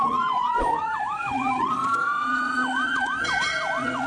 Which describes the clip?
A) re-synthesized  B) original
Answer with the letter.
A